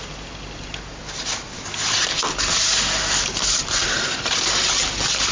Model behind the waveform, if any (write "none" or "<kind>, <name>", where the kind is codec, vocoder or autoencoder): none